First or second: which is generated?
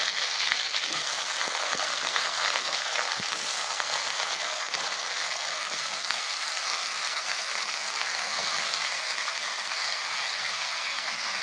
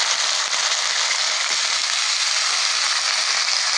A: first